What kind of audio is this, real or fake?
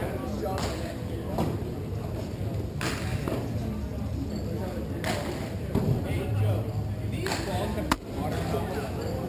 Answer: real